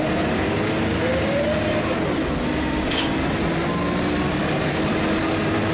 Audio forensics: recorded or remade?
recorded